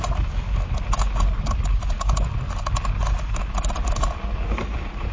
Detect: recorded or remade recorded